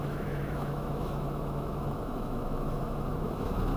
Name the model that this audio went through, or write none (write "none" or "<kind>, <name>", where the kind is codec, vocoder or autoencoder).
autoencoder, DAC-VAE